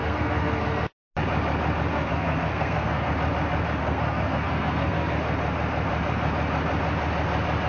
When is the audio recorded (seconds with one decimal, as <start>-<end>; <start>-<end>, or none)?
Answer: 0.6-1.9; 3.1-3.8; 5.2-7.7